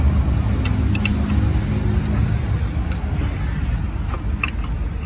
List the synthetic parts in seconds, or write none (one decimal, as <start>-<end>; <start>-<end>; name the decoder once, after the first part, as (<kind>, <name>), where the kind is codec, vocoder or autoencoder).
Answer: none